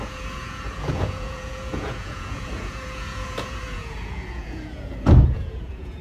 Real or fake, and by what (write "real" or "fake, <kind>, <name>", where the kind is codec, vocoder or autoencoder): fake, vocoder, Vocos